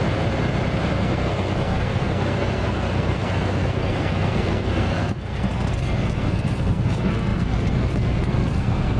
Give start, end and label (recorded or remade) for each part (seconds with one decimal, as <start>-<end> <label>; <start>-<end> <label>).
0.0-0.9 recorded; 0.9-9.0 remade